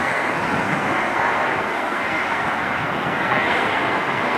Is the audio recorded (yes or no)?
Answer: no